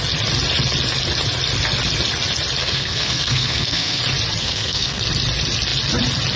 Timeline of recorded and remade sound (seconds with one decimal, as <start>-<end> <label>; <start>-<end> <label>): 0.0-2.6 recorded; 2.6-4.0 remade; 4.0-4.4 recorded; 4.4-5.0 remade; 5.0-6.4 recorded